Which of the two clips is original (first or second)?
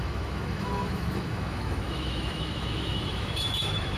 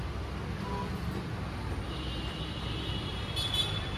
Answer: second